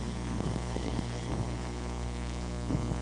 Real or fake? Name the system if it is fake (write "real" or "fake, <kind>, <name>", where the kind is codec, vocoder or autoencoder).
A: fake, codec, SNAC